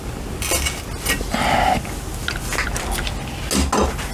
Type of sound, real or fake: real